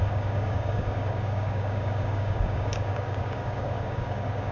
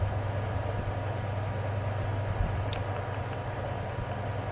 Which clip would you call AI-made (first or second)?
first